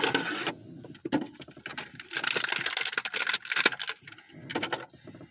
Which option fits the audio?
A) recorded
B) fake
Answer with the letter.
A